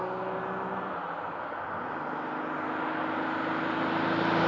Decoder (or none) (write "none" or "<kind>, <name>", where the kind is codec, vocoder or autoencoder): none